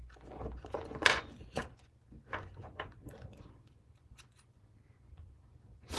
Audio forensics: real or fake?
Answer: fake